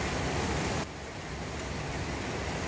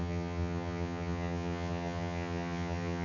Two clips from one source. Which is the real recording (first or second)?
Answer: first